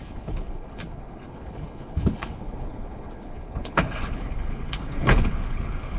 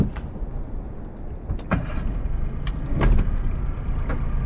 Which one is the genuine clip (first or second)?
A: second